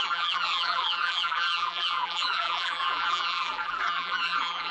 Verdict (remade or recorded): remade